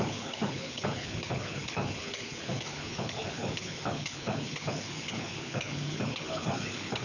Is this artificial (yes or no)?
yes